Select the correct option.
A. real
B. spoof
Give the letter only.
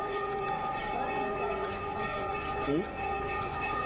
B